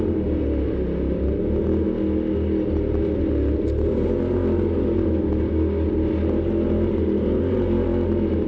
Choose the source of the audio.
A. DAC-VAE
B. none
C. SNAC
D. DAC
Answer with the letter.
B